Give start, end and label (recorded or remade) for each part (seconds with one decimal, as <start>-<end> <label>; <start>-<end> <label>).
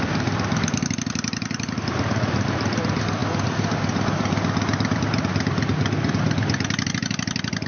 0.0-7.7 recorded